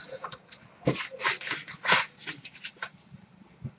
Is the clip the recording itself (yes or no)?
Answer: no